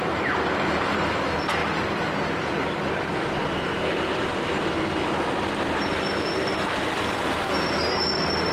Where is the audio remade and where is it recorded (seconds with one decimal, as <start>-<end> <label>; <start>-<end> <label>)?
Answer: 0.0-8.5 recorded